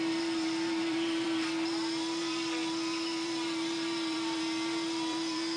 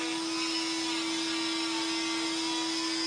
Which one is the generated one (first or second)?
first